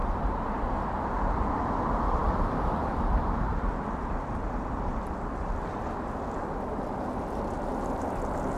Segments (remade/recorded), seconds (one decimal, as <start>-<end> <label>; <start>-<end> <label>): 0.0-8.6 recorded